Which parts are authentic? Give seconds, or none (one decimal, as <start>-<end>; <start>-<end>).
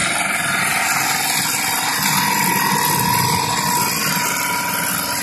0.6-5.2